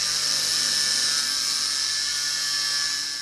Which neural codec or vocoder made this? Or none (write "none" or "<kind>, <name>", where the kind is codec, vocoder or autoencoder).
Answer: none